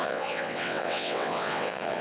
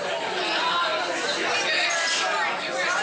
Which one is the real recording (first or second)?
second